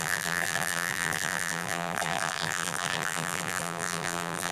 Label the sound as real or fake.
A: fake